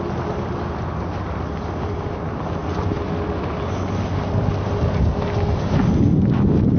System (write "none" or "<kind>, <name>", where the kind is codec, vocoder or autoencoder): none